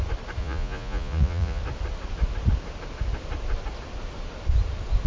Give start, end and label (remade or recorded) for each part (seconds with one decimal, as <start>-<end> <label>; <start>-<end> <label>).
0.0-0.4 recorded; 0.4-1.6 remade; 1.6-5.1 recorded